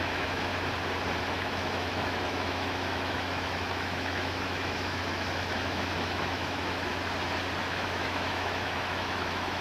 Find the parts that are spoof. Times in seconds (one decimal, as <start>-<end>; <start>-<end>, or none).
0.0-0.5; 1.3-6.9; 7.6-9.6